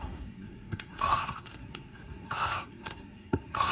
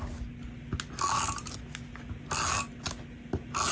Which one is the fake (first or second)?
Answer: first